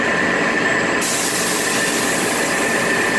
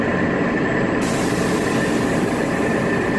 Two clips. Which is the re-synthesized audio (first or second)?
second